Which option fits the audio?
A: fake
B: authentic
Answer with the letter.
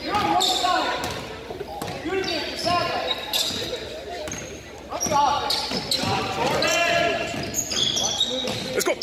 B